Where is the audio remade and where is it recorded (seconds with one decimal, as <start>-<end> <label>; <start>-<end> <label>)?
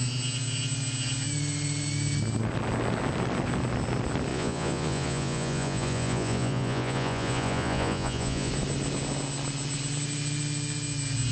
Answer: 0.0-4.3 recorded; 4.3-8.5 remade; 8.5-11.3 recorded